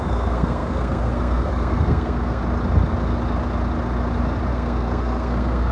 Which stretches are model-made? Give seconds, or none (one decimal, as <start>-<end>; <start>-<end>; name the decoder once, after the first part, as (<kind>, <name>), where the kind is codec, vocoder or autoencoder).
0.0-2.4 (codec, SNAC); 4.5-5.7